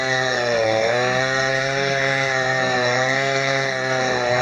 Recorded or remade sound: remade